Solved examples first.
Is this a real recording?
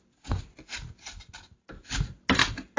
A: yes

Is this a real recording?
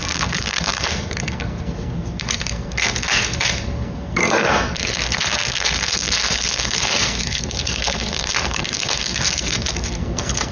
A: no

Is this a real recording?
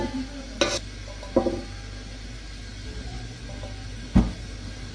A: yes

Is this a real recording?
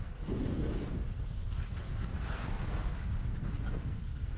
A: no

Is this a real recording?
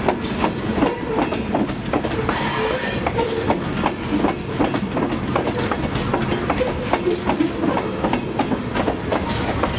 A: yes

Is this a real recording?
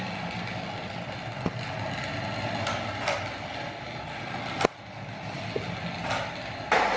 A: yes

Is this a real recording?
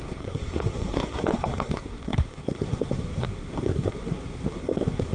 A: no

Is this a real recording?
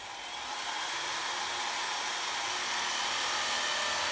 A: yes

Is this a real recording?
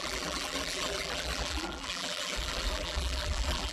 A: no